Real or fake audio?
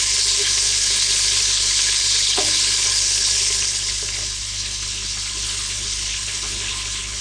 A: fake